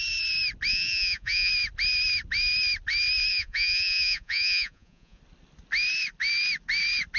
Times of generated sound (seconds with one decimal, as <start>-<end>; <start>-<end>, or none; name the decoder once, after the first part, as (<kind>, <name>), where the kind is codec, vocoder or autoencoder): 0.7-1.5 (vocoder, Vocos); 3.3-5.2